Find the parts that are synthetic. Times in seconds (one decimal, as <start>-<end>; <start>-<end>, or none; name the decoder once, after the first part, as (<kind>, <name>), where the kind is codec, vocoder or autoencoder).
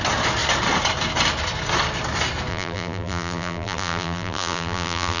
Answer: 2.5-5.2 (vocoder, BigVGAN v2)